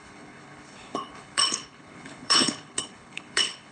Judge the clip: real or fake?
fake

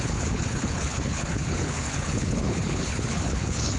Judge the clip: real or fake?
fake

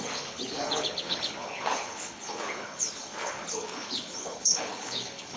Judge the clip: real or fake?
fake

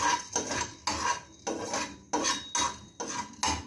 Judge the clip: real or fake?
real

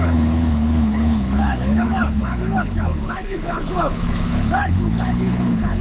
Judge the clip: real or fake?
fake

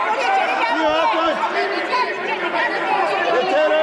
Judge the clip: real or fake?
real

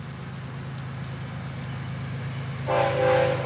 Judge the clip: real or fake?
real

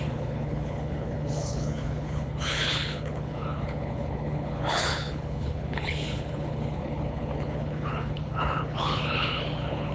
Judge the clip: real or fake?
fake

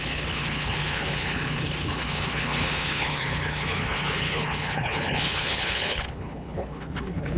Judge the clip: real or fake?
fake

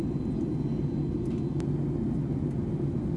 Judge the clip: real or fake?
real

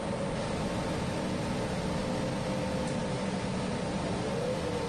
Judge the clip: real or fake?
real